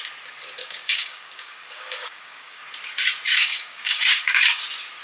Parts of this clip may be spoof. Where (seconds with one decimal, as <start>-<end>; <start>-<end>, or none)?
0.6-2.6; 3.3-4.6